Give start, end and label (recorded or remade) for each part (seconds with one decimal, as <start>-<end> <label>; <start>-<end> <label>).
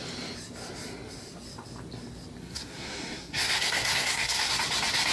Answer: 0.0-2.4 recorded; 2.4-4.5 remade; 4.5-5.1 recorded